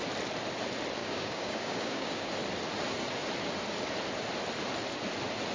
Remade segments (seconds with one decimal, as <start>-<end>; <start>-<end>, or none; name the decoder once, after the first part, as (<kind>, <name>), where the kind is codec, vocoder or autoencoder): 1.0-2.3 (codec, DAC)